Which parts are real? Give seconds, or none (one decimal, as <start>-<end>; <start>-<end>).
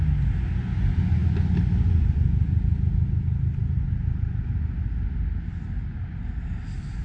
0.0-7.0